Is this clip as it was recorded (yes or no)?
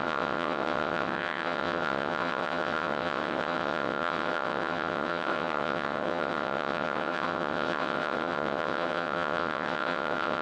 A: no